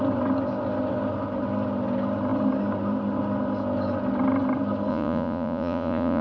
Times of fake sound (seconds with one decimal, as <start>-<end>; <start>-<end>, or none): 4.9-6.2